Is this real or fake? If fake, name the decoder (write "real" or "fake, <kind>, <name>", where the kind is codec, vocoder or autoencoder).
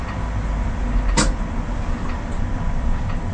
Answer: real